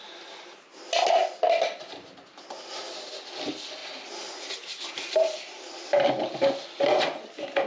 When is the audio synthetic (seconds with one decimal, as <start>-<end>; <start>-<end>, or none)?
none